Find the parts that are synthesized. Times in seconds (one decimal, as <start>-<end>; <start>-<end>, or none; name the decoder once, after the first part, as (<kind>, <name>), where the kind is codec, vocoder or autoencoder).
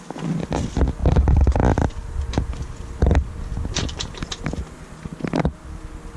1.0-4.1 (vocoder, BigVGAN v2); 5.1-5.8